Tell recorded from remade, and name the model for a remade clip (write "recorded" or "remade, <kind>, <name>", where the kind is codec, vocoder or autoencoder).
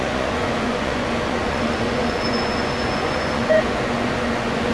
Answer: remade, vocoder, Vocos